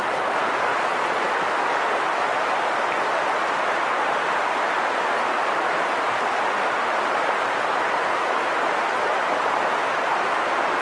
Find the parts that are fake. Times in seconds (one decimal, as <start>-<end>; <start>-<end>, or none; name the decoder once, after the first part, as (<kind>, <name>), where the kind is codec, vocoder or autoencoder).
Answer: 0.7-1.3 (vocoder, Vocos)